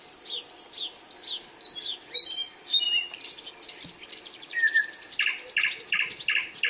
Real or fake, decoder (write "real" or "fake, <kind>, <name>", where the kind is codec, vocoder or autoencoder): real